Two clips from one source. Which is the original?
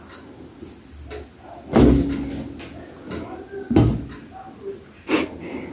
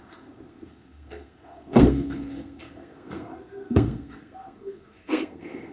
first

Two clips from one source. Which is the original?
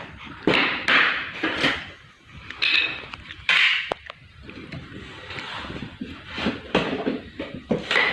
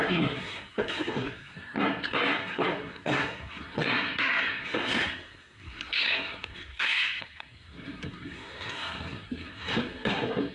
first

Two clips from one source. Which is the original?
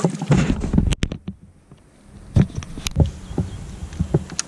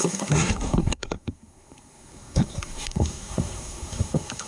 first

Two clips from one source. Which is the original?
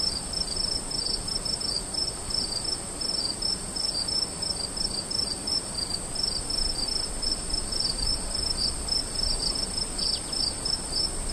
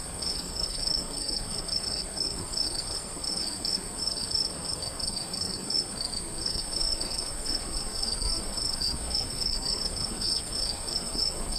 first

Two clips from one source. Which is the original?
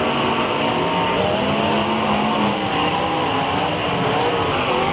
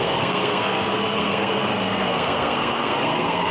first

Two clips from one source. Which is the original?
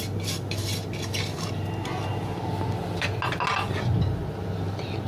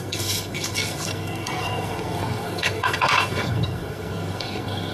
first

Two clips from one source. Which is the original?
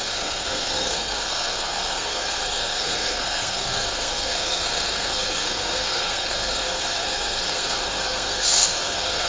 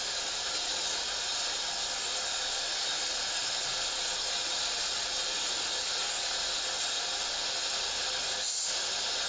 second